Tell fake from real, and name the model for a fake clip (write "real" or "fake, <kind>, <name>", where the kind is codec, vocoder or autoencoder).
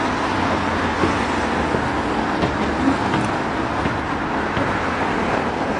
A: real